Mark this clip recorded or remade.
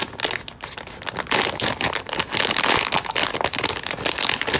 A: recorded